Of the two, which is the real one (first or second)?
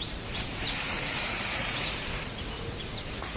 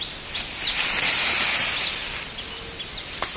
second